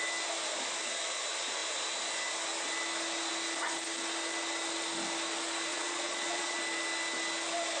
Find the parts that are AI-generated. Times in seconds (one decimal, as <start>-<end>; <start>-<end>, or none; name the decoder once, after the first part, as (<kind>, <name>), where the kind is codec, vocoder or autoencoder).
5.7-6.6 (vocoder, Vocos)